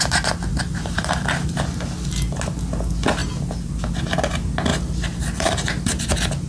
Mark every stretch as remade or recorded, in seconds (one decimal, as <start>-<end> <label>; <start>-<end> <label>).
0.0-0.5 recorded; 0.5-1.6 remade; 1.6-4.7 recorded; 4.7-6.0 remade; 6.0-6.5 recorded